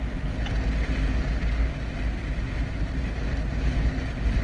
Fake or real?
real